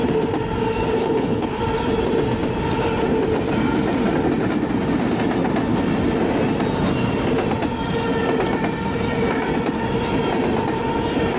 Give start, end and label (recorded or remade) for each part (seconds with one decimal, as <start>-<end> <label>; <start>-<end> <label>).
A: 0.0-1.0 recorded; 1.0-1.6 remade; 1.6-11.4 recorded